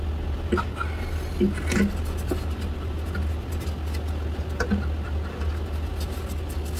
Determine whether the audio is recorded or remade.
recorded